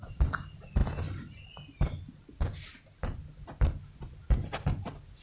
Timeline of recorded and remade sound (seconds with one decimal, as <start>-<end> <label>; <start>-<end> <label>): 0.0-5.2 recorded